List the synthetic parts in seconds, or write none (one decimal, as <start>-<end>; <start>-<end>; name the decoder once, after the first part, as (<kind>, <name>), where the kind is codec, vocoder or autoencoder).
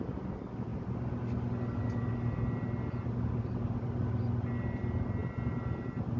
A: none